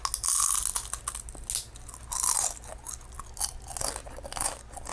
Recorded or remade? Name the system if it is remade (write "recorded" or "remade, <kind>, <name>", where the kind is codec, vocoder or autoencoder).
recorded